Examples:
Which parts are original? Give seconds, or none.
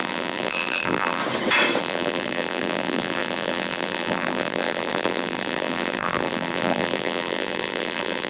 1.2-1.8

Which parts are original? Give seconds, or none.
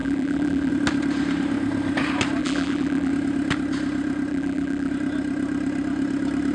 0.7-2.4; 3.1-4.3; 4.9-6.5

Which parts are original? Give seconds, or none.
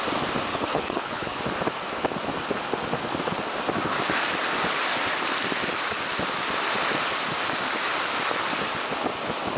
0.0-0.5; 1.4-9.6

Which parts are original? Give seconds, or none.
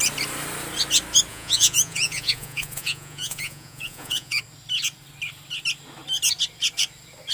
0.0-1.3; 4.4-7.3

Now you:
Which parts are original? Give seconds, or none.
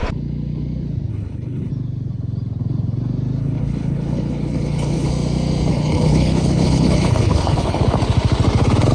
0.0-1.1; 1.7-3.4; 5.1-5.7; 7.8-8.9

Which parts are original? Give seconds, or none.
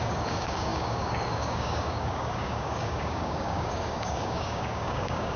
none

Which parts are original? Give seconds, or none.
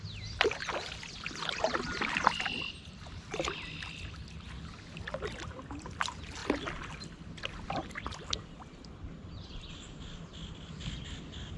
0.0-11.6